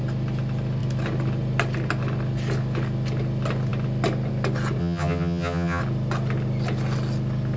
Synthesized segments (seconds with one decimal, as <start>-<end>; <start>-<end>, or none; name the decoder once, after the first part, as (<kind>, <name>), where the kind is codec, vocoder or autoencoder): 4.8-5.8 (vocoder, HiFi-GAN)